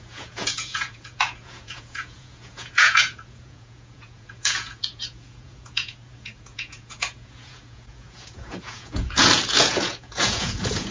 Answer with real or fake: fake